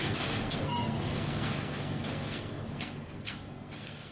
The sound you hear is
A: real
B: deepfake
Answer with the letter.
B